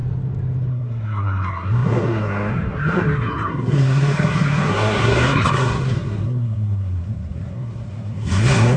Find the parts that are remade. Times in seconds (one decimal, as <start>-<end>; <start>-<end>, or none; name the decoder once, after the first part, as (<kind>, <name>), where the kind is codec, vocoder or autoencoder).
0.7-8.8 (codec, SNAC)